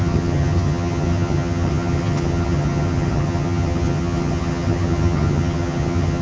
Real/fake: fake